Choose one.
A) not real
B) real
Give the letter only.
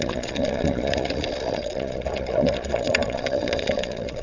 A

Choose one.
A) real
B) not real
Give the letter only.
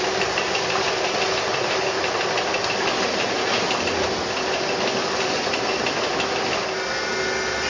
A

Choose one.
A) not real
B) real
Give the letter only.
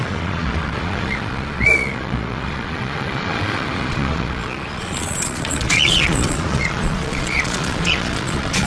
A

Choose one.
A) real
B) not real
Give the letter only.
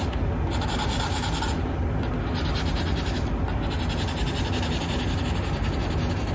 A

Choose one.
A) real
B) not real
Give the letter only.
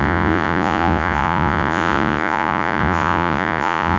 B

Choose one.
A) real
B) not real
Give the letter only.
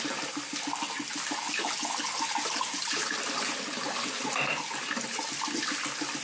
A